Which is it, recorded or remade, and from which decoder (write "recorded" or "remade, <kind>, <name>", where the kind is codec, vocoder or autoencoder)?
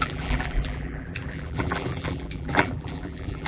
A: remade, vocoder, BigVGAN v2